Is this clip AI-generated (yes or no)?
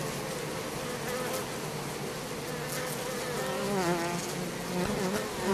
no